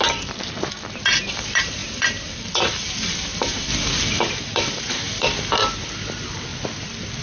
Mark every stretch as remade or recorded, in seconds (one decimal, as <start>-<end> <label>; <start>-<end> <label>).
0.0-3.7 remade; 3.7-4.2 recorded; 4.2-6.5 remade; 6.5-7.2 recorded